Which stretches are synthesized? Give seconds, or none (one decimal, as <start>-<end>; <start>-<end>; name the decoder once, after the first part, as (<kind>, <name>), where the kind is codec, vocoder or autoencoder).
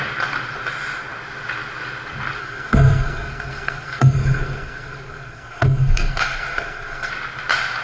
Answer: 2.4-7.1 (codec, SNAC)